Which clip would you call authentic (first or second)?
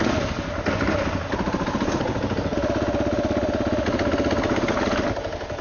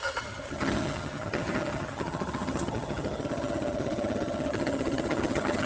first